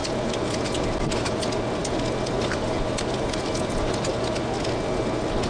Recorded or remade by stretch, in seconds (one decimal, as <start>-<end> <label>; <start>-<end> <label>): 0.0-0.9 remade; 0.9-1.8 recorded; 1.8-4.1 remade; 4.1-5.5 recorded